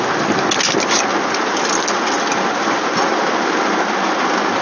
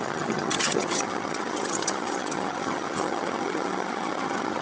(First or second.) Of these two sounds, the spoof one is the second